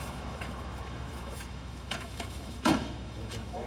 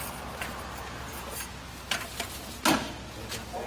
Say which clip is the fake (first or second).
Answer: first